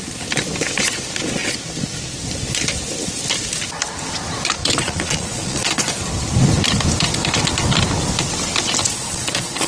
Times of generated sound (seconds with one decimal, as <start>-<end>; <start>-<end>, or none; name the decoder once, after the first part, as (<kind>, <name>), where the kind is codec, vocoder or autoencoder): 4.6-6.0 (vocoder, Vocos); 8.8-9.7